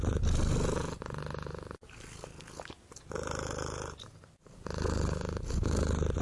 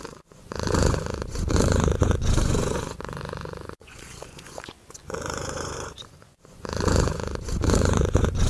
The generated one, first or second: second